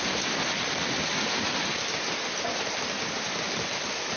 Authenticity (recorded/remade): recorded